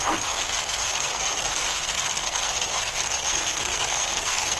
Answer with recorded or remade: remade